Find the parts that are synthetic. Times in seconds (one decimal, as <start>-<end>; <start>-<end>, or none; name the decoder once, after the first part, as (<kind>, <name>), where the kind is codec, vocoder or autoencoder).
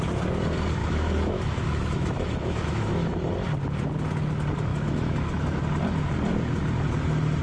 0.8-3.3 (autoencoder, DAC-VAE); 4.7-5.6